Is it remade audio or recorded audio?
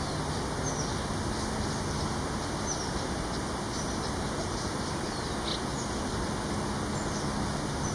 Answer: recorded